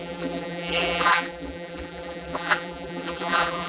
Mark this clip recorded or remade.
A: remade